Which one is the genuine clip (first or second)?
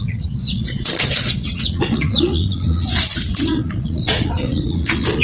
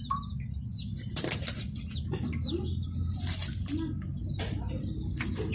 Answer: second